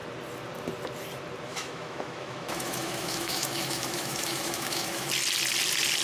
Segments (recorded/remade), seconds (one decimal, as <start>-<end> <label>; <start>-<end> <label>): 0.0-1.5 recorded; 1.5-5.1 remade; 5.1-6.0 recorded